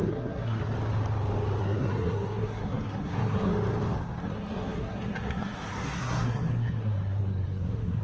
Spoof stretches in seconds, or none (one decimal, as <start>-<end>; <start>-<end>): 0.0-0.6; 1.6-3.5; 4.2-8.0